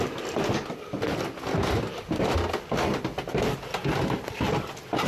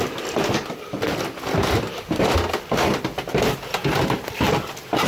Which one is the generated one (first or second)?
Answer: second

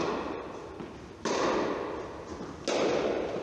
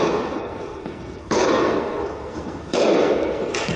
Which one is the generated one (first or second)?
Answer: second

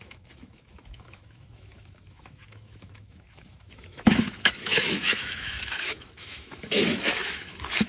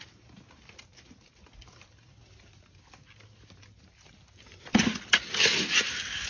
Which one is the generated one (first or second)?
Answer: first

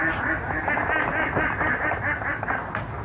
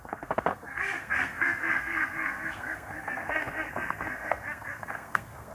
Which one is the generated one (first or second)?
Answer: second